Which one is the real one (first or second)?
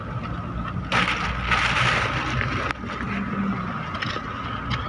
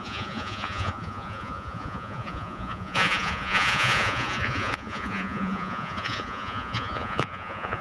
first